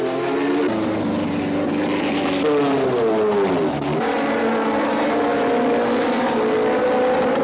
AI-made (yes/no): no